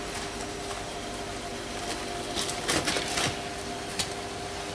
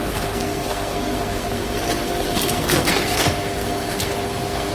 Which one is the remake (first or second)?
second